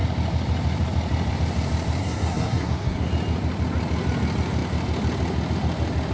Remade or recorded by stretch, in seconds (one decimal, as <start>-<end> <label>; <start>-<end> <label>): 0.0-2.0 recorded; 2.0-3.1 remade; 3.1-6.1 recorded